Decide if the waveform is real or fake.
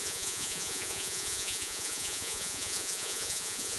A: fake